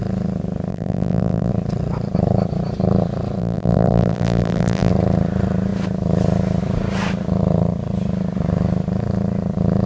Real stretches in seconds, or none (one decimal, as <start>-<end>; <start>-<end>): 0.0-0.7; 1.5-3.4; 4.9-9.9